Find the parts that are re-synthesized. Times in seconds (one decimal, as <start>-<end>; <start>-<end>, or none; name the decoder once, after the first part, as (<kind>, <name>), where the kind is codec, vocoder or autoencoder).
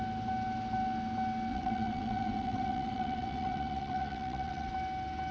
1.5-4.7 (vocoder, WaveNeXt)